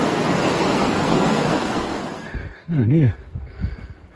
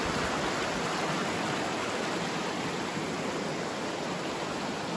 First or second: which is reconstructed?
first